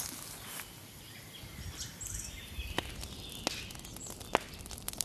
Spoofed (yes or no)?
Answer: no